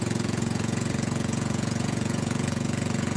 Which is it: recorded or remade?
remade